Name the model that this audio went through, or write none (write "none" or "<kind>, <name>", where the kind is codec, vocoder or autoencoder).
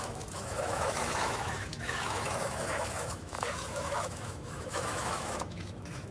autoencoder, DAC-VAE